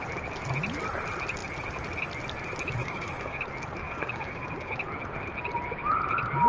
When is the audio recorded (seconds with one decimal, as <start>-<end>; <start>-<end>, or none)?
0.0-2.8; 3.4-3.8; 4.7-6.5